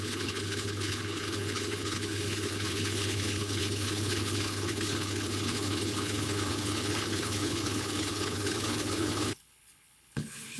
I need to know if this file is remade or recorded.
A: remade